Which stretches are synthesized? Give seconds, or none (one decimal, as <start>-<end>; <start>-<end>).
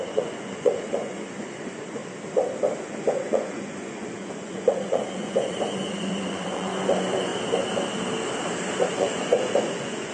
0.0-2.0; 2.8-7.3; 8.9-10.1